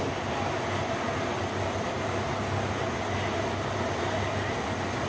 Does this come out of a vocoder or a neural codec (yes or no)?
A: no